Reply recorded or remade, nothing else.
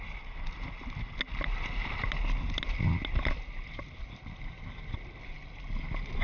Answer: recorded